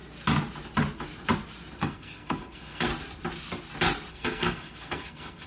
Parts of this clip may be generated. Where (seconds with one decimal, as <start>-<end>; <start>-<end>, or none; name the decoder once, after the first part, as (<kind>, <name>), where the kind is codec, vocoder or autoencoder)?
1.8-2.9 (codec, SNAC); 4.1-5.5